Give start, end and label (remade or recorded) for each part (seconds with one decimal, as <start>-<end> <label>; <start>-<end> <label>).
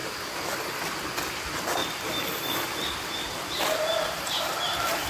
0.0-5.1 recorded